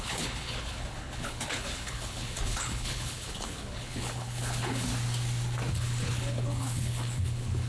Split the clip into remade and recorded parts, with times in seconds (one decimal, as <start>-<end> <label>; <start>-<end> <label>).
0.0-4.9 remade; 4.9-5.7 recorded; 5.7-7.7 remade